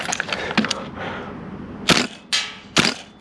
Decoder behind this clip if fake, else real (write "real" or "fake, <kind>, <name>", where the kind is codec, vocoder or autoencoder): real